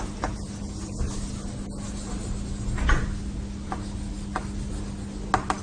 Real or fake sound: real